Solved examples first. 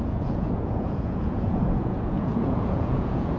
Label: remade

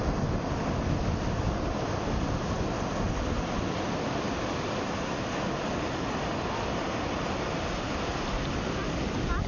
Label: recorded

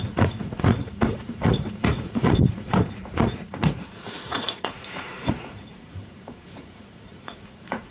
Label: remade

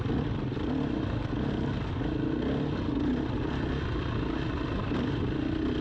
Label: recorded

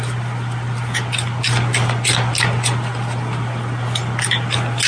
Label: recorded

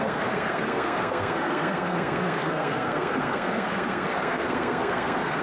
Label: remade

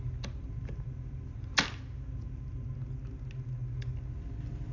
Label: recorded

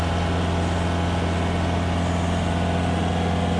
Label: recorded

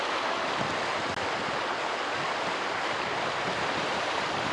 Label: recorded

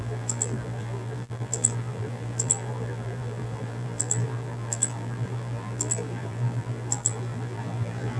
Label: remade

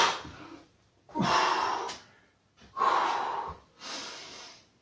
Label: recorded